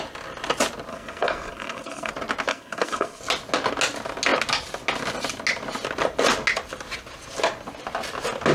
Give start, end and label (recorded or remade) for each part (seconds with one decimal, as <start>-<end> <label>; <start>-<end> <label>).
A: 0.0-0.9 recorded; 0.9-2.1 remade; 2.1-2.5 recorded; 2.5-3.2 remade; 3.2-8.5 recorded